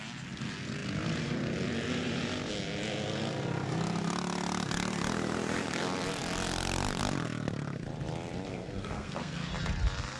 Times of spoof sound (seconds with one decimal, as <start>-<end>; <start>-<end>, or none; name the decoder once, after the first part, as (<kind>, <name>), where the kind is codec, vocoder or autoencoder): 8.5-9.5 (codec, SNAC)